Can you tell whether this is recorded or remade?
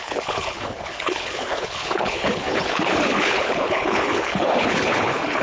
remade